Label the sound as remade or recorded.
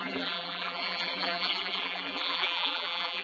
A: remade